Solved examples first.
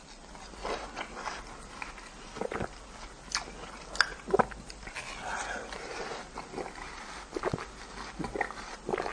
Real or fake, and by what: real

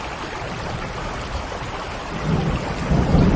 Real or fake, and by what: real